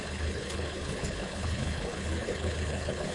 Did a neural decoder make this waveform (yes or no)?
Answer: yes